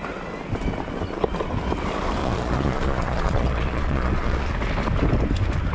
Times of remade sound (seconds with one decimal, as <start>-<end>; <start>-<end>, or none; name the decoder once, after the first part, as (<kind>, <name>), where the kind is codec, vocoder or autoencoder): 2.2-4.5 (vocoder, Vocos)